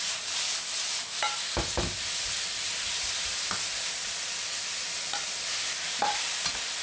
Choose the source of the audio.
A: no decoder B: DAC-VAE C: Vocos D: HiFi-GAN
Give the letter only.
A